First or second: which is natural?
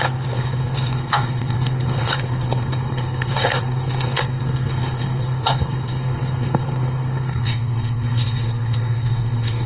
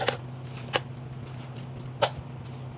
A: second